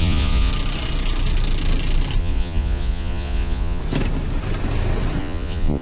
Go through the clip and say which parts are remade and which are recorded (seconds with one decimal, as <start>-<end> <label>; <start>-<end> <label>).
0.0-0.5 remade; 0.5-2.2 recorded; 2.2-3.8 remade; 3.8-5.2 recorded; 5.2-5.8 remade